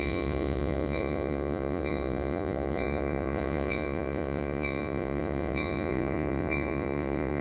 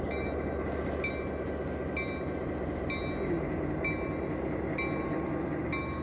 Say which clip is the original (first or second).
second